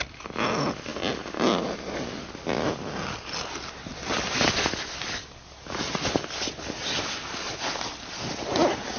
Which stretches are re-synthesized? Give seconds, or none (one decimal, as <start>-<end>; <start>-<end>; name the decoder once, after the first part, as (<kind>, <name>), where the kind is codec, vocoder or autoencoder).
none